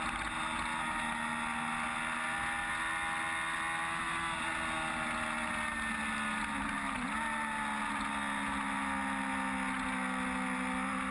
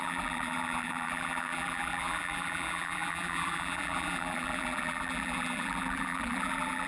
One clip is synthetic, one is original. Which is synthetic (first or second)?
second